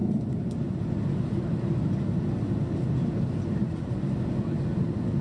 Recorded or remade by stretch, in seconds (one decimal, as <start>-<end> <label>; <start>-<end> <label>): 0.0-5.2 recorded